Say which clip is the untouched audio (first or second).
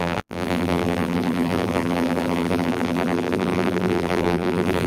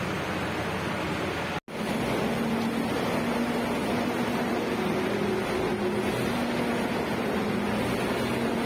second